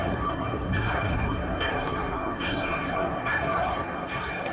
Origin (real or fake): fake